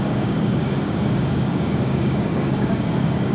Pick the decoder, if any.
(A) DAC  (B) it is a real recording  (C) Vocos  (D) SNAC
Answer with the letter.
A